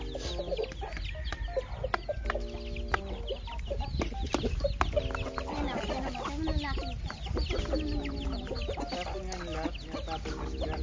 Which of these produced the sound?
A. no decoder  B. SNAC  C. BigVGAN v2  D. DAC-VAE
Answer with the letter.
A